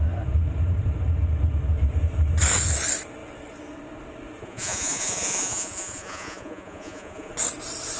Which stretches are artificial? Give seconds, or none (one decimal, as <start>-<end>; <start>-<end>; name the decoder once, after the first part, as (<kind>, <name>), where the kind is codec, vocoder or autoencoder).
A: 4.4-7.3 (vocoder, Vocos)